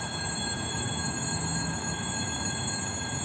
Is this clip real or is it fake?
fake